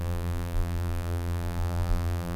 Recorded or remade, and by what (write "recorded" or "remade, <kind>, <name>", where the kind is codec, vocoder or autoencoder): remade, vocoder, BigVGAN v2